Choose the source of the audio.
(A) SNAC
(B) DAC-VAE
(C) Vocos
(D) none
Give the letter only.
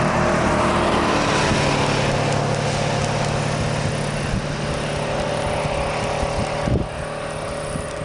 D